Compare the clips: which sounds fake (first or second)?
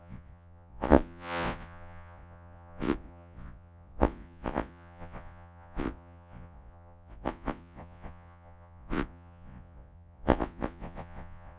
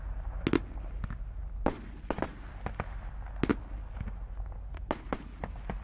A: first